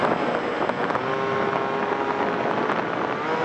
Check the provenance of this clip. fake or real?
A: real